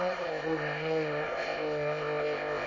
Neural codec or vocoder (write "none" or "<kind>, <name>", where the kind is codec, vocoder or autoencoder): codec, ZipCodec